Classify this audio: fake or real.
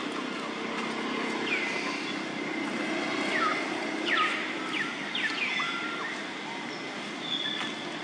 real